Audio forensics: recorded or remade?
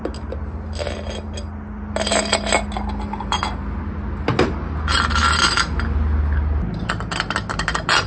recorded